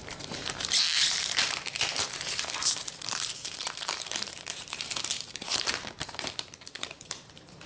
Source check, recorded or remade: remade